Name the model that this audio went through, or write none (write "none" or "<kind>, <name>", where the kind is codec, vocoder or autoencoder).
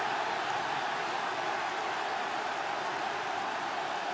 none